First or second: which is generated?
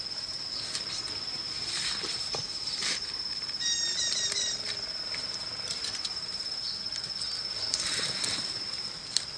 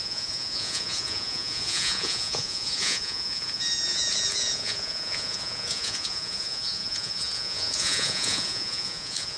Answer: second